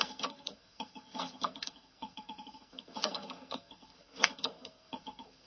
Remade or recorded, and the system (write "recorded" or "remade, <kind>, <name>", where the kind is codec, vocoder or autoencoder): remade, codec, SNAC